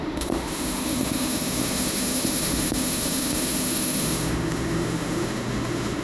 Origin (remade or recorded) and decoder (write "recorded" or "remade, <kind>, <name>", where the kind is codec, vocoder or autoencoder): remade, autoencoder, DAC-VAE